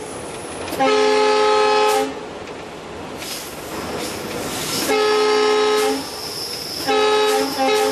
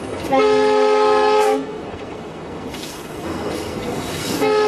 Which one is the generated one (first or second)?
second